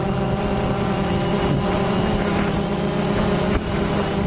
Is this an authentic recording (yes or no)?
yes